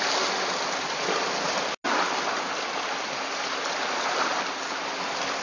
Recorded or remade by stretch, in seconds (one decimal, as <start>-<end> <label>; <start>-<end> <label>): 0.0-5.4 recorded